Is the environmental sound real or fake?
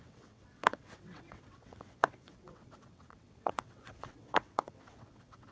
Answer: fake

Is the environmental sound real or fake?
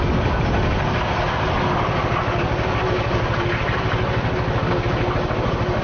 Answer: real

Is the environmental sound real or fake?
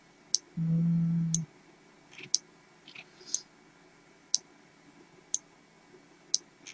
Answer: real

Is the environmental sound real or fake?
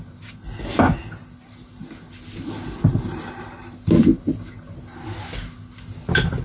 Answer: real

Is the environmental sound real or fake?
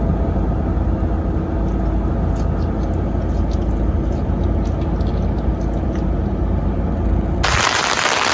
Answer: real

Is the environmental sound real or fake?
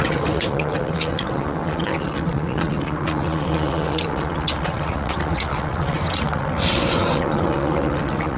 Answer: fake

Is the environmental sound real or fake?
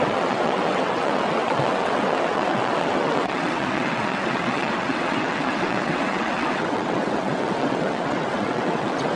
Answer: fake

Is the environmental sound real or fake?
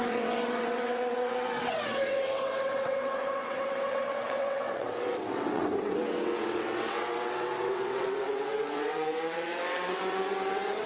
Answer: fake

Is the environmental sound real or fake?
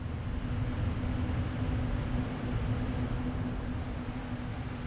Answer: real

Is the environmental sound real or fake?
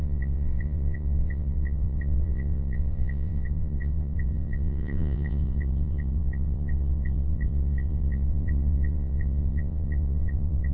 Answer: fake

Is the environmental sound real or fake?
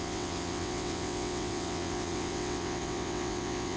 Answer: fake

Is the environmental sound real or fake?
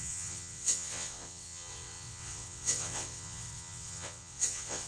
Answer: fake